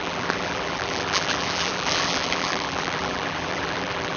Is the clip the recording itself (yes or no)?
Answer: no